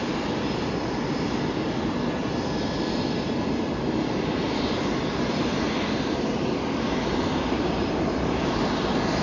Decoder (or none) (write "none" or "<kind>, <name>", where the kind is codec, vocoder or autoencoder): none